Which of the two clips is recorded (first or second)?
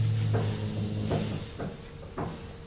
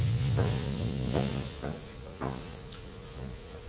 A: first